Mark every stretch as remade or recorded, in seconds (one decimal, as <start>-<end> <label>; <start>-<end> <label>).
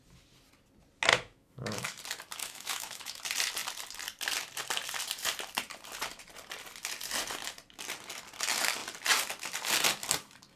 0.0-1.1 recorded; 1.1-2.0 remade; 2.0-2.4 recorded; 2.4-3.2 remade; 3.2-10.6 recorded